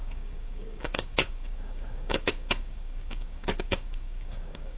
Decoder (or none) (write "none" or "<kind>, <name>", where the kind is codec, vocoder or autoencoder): codec, DAC